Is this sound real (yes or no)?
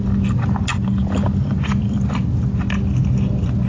yes